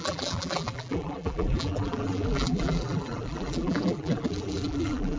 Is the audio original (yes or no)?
no